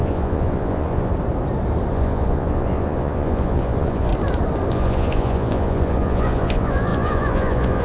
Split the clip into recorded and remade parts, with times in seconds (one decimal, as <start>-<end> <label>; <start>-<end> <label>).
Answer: 0.0-1.1 remade; 1.1-1.9 recorded; 1.9-4.1 remade; 4.1-4.7 recorded; 4.7-7.8 remade